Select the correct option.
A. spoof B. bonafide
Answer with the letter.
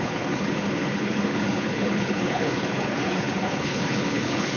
A